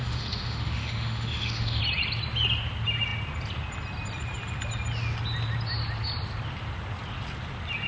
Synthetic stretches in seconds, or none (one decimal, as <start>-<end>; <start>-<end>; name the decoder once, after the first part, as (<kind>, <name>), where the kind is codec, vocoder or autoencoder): 0.0-1.8 (autoencoder, DAC-VAE)